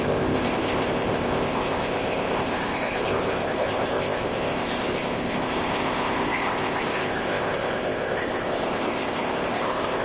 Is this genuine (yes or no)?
no